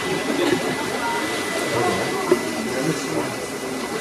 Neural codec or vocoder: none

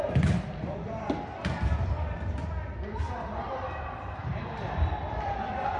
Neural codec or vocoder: vocoder, BigVGAN v2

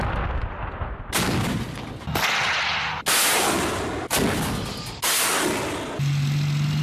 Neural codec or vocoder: none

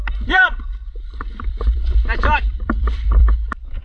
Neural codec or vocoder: vocoder, BigVGAN v2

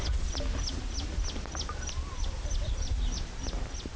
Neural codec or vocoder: none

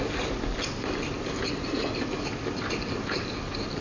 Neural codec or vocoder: none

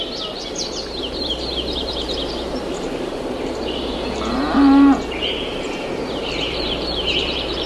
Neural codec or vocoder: vocoder, BigVGAN v2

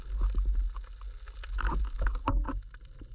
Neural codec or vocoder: none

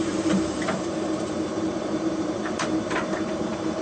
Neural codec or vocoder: vocoder, BigVGAN v2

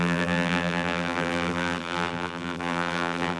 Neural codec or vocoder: vocoder, BigVGAN v2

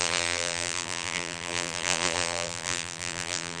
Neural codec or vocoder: vocoder, BigVGAN v2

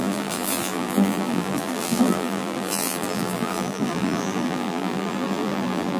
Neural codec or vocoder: vocoder, BigVGAN v2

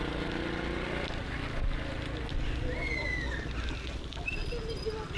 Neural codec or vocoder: none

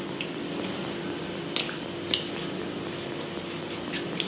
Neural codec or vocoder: none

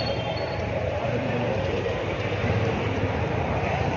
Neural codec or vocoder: vocoder, BigVGAN v2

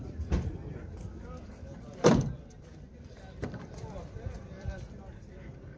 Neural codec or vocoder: vocoder, BigVGAN v2